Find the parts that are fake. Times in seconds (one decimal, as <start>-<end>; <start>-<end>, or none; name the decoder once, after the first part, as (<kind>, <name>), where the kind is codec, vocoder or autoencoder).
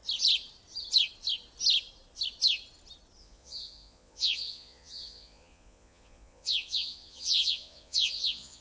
3.2-8.6 (vocoder, Vocos)